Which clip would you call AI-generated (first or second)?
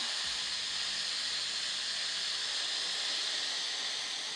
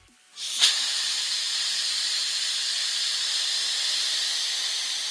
second